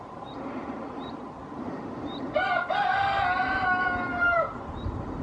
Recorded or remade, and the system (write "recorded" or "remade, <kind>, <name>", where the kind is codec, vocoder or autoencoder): recorded